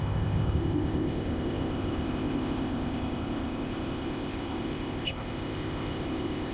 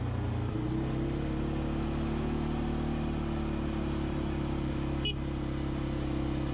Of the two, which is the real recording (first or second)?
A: second